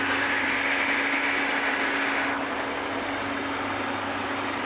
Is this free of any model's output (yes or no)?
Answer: yes